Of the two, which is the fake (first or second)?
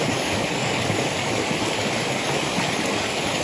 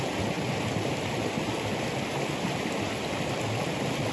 first